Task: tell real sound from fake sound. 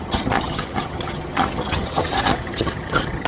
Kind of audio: fake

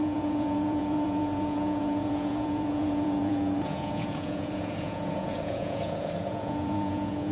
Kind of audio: fake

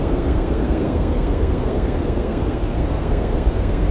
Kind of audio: fake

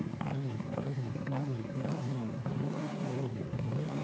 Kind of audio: fake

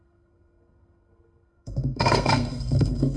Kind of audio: fake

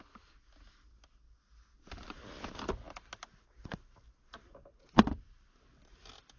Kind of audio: real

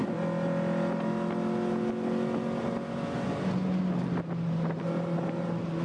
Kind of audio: real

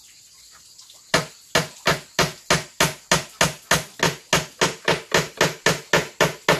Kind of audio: real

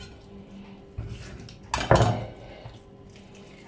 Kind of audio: real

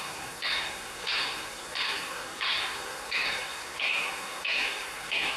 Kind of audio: fake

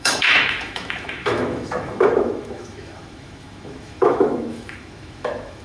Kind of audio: fake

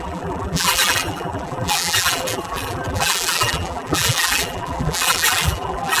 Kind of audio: fake